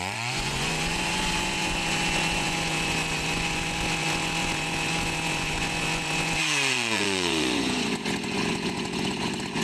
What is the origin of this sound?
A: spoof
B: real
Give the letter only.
A